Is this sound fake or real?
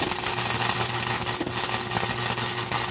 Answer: real